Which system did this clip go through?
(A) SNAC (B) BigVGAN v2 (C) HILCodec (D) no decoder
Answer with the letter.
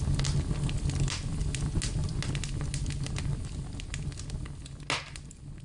D